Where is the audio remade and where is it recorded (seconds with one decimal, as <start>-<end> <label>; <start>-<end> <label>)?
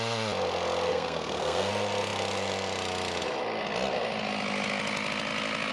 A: 0.0-0.9 recorded; 0.9-1.7 remade; 1.7-5.7 recorded